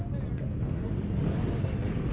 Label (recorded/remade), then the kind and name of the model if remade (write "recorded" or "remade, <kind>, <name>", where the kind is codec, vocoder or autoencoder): recorded